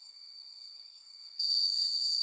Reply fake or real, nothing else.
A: fake